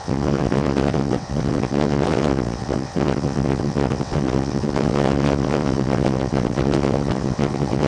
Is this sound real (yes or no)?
no